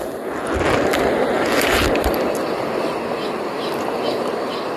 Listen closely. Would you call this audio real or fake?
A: real